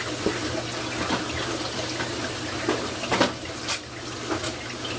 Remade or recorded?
recorded